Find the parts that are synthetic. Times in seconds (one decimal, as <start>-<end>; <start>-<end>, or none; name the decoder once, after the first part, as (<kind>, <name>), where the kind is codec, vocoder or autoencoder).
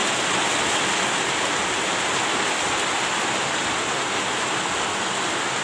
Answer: none